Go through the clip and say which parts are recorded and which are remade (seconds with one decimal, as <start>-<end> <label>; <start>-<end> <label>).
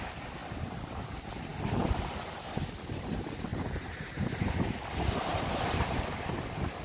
0.0-3.5 recorded; 3.5-4.4 remade; 4.4-6.8 recorded